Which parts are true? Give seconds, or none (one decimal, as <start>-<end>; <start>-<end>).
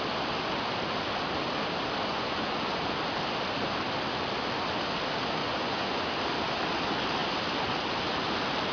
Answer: 0.0-2.1; 2.8-5.4; 6.1-8.7